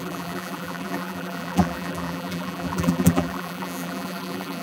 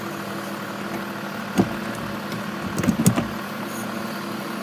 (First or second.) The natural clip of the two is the second